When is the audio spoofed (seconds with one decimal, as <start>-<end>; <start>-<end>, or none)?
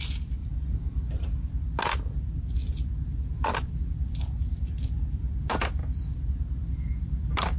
0.4-1.0